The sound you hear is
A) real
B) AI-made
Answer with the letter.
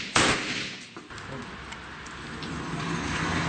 A